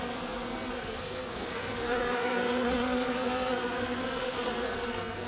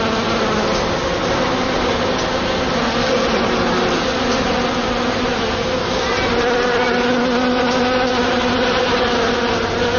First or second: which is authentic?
second